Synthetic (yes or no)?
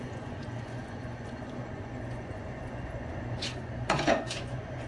yes